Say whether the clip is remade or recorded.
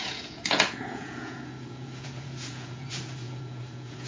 remade